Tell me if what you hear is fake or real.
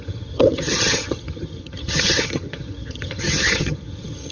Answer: fake